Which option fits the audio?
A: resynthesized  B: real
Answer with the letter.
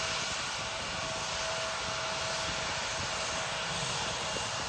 B